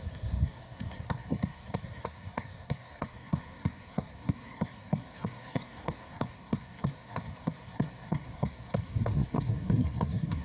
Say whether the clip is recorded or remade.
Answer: remade